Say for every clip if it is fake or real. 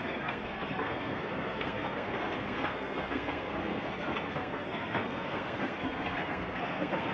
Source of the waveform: fake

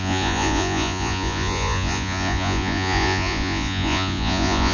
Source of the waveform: fake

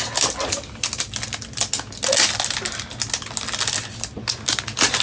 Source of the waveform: real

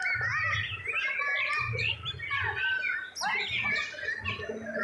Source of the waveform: real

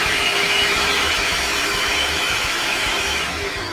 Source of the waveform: fake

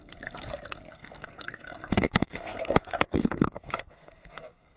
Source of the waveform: fake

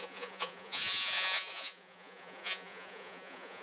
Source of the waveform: fake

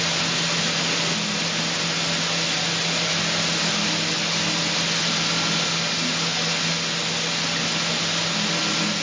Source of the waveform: real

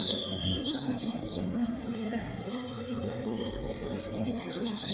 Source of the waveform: fake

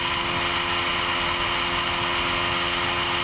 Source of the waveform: real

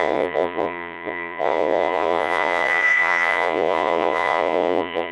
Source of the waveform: fake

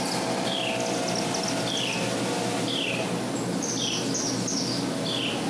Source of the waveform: real